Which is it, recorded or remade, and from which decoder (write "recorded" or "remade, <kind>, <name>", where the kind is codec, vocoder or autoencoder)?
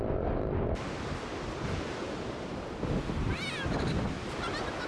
recorded